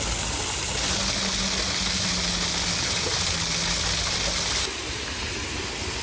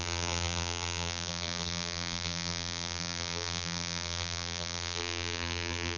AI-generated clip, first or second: second